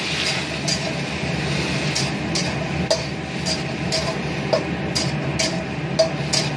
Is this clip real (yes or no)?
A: yes